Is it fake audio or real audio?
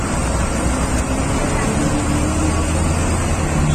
real